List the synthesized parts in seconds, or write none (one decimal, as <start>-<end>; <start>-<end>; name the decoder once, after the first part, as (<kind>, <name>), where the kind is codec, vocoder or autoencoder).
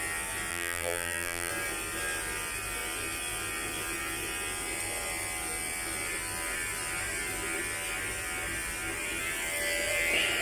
0.5-1.5 (vocoder, BigVGAN v2)